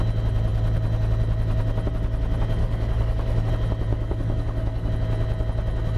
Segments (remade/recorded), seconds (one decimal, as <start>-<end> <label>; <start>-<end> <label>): 0.0-2.6 recorded; 2.6-3.5 remade; 3.5-3.9 recorded; 3.9-4.9 remade; 4.9-6.0 recorded